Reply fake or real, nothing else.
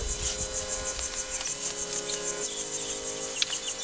real